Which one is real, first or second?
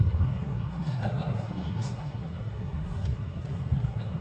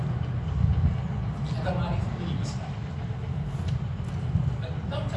second